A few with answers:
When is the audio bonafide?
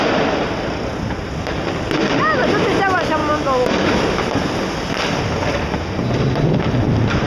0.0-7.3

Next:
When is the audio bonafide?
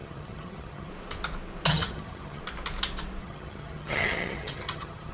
0.9-1.7; 2.4-3.2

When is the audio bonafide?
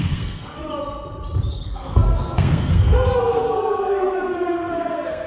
0.6-1.5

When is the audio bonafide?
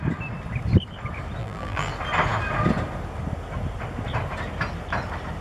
0.0-1.4; 1.9-5.4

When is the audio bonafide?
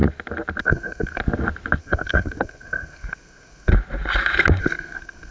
0.0-0.6; 1.2-1.8; 3.7-4.6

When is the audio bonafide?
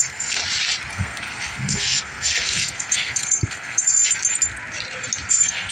0.4-0.9; 4.0-5.3